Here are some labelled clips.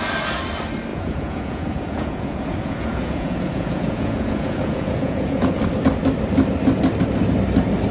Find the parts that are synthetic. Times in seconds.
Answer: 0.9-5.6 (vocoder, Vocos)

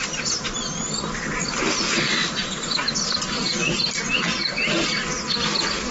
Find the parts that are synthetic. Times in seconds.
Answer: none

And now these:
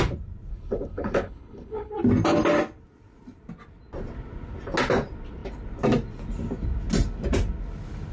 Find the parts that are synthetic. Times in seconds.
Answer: 0.5-1.9 (codec, HILCodec)

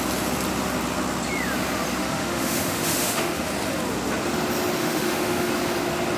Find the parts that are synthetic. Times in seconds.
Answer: 2.0-3.5 (autoencoder, DAC-VAE); 4.8-5.5